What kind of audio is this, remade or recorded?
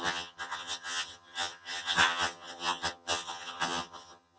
remade